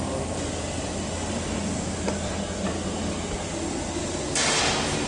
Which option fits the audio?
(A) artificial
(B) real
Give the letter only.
B